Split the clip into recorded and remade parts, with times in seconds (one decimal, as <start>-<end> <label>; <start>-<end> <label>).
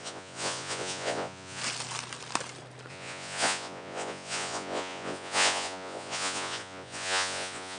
0.0-1.6 remade; 1.6-2.9 recorded; 2.9-7.8 remade